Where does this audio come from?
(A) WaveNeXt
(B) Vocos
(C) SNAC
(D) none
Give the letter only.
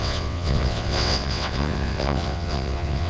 A